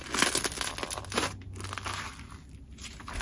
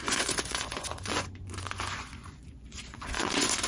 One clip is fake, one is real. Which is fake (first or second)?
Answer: second